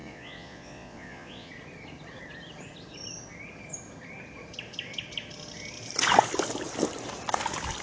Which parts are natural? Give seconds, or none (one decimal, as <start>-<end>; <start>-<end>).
1.5-7.8

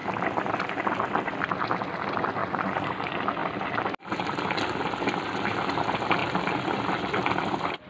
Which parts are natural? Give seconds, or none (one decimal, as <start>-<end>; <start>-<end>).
0.0-2.4; 3.0-7.9